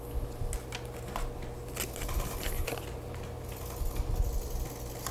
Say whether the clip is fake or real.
real